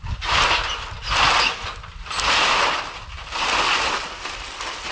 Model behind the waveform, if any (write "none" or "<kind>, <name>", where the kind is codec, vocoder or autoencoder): none